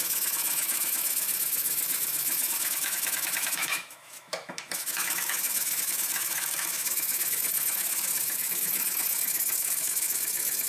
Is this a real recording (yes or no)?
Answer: no